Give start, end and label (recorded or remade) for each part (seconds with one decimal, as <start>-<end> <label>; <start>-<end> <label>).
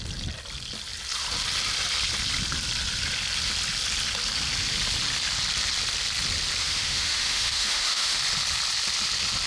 0.0-6.6 recorded; 6.6-8.2 remade; 8.2-9.5 recorded